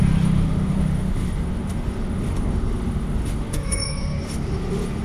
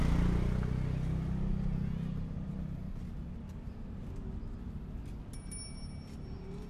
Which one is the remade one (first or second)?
first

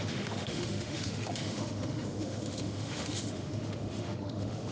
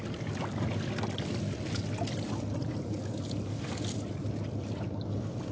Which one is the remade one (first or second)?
first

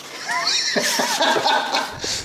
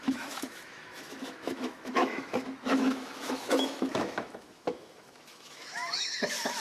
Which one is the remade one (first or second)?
second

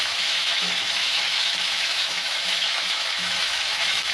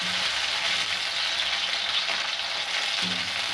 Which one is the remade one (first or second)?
first